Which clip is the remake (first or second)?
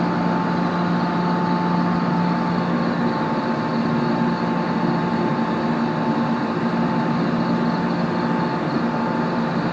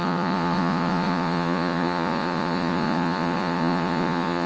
second